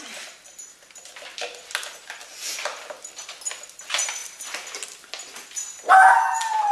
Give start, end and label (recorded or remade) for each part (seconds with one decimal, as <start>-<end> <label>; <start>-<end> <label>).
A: 0.0-6.7 recorded